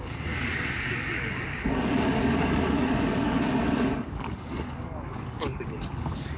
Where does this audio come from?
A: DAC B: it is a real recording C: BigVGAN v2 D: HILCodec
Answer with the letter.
A